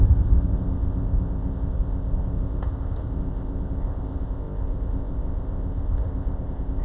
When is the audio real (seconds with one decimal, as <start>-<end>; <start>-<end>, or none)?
none